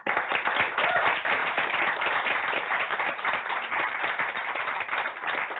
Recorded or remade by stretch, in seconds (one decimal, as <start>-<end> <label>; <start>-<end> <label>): 0.0-1.4 recorded; 1.4-4.8 remade; 4.8-5.6 recorded